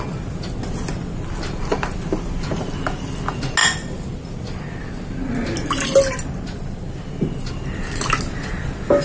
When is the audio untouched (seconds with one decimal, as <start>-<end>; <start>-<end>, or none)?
0.0-9.0